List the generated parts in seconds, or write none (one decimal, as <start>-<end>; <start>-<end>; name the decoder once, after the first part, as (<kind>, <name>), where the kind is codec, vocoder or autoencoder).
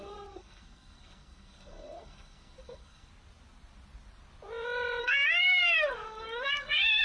0.0-3.1 (codec, SNAC); 5.0-7.0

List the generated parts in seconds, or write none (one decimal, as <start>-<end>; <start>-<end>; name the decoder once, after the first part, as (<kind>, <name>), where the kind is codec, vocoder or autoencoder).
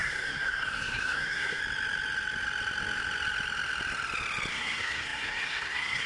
0.0-1.6 (codec, SNAC); 4.5-6.1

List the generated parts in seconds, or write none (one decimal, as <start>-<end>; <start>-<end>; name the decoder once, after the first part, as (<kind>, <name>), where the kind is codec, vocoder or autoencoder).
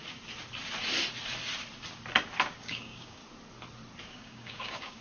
2.6-3.2 (codec, DAC); 4.1-5.0